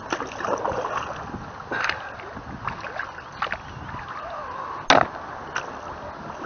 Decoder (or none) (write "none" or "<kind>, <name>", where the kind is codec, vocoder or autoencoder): none